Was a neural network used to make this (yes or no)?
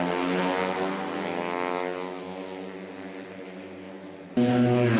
no